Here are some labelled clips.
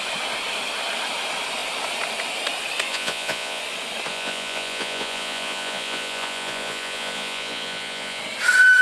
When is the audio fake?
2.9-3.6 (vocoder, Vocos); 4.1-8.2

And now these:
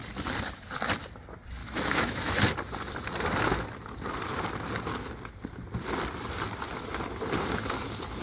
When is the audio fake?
1.6-2.4 (autoencoder, DAC-VAE)